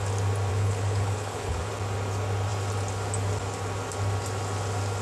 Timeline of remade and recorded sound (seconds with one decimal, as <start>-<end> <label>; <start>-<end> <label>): 0.0-0.5 recorded; 0.5-1.7 remade; 1.7-5.0 recorded